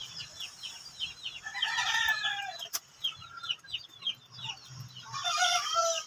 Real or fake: real